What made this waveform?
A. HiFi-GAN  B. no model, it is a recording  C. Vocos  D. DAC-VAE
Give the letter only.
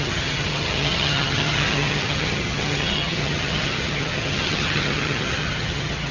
A